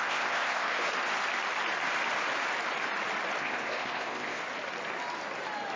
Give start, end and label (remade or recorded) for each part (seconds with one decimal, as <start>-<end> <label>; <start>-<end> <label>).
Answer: 0.0-0.9 remade; 0.9-3.4 recorded; 3.4-4.4 remade; 4.4-5.8 recorded